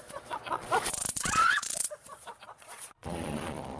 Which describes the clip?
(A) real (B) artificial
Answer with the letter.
B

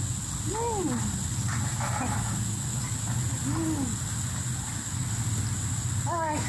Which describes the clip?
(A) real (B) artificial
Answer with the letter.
A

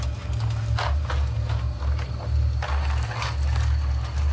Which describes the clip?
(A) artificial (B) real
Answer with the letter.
B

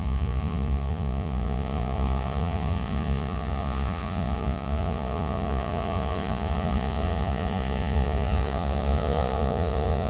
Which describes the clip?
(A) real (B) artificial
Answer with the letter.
B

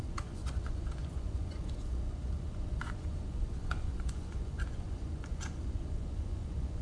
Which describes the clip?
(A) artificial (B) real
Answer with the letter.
A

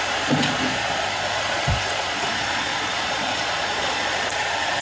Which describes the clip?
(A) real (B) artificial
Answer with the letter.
B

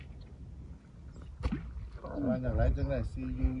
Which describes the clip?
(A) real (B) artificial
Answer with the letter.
A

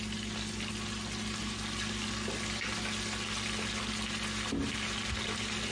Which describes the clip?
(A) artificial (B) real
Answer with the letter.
B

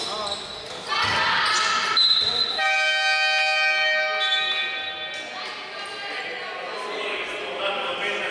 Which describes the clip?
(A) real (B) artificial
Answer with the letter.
A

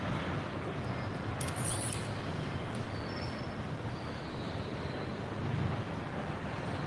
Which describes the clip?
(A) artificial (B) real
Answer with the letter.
B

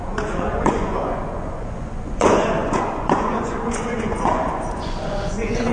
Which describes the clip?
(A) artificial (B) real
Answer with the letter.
A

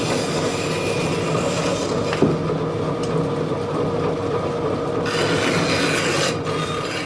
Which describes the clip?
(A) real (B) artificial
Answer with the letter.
A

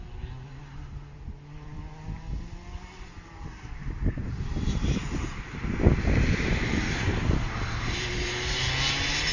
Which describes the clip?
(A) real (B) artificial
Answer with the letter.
A